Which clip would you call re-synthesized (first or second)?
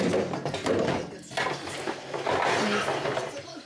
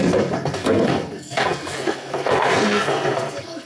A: second